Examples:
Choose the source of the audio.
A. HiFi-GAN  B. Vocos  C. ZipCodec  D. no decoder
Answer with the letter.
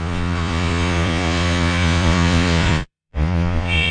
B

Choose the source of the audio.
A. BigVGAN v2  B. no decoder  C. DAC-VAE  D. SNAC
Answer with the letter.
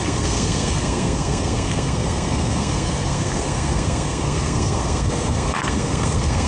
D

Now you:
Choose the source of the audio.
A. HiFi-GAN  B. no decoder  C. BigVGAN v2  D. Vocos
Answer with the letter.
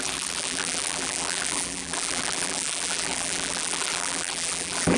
C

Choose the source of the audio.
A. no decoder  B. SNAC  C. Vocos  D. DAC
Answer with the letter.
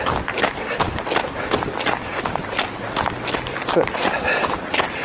A